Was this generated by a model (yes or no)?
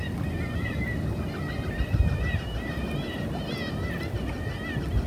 no